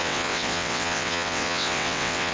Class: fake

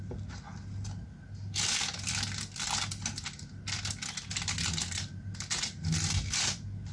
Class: real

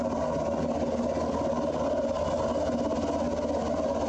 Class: real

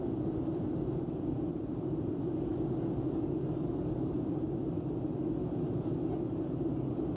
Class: real